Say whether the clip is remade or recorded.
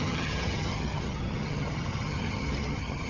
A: remade